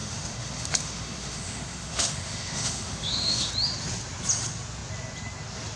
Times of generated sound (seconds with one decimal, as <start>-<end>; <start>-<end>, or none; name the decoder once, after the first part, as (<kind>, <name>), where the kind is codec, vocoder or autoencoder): 0.0-3.5 (autoencoder, DAC-VAE)